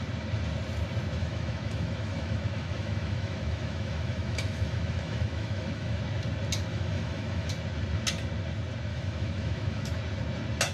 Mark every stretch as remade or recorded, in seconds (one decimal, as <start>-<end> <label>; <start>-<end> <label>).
0.0-1.2 recorded; 1.2-6.0 remade; 6.0-6.7 recorded; 6.7-7.5 remade; 7.5-8.9 recorded; 8.9-10.0 remade; 10.0-10.7 recorded